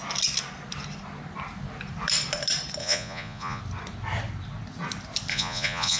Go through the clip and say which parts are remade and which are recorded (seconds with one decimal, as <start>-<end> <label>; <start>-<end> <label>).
0.0-2.8 recorded; 2.8-3.6 remade; 3.6-5.3 recorded; 5.3-6.0 remade